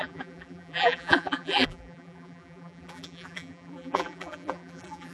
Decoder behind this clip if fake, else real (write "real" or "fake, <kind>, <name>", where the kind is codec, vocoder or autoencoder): fake, vocoder, BigVGAN v2